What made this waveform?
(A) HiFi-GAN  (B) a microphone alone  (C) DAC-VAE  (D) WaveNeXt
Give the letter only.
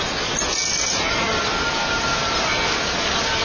B